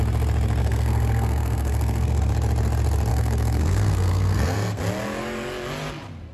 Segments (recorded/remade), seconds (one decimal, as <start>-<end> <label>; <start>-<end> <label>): 0.0-0.6 recorded; 0.6-2.3 remade; 2.3-3.1 recorded; 3.1-4.8 remade; 4.8-6.3 recorded